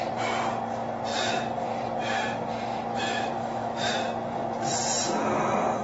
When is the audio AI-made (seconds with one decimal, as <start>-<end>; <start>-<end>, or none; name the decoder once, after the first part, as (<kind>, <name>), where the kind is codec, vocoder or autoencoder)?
2.9-3.9 (autoencoder, DAC-VAE)